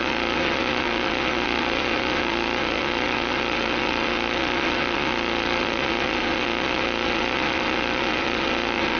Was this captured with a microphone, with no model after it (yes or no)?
no